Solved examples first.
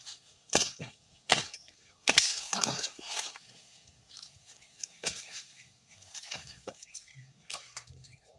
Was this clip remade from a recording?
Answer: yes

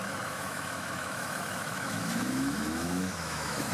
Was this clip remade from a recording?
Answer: yes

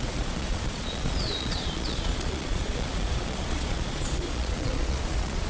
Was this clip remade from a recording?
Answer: yes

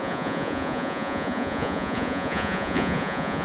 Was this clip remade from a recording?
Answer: yes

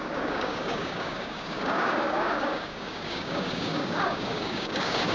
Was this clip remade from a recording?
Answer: yes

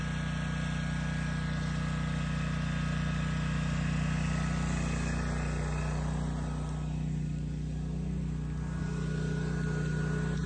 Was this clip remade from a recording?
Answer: no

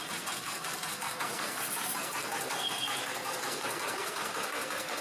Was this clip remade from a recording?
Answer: yes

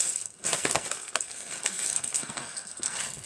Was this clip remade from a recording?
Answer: yes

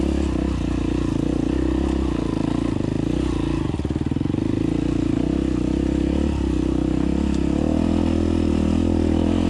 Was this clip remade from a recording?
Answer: no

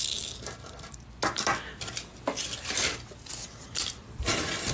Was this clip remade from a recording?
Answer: no